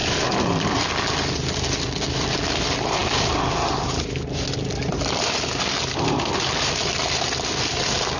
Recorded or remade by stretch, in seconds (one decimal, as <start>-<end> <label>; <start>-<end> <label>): 0.0-8.2 recorded